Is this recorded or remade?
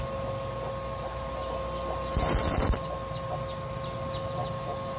recorded